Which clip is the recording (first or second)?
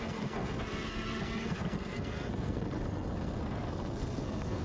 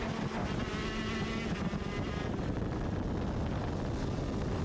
second